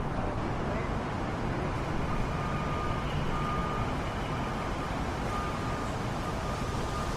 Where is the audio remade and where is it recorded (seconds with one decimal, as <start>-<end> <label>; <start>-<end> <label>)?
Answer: 0.0-7.2 recorded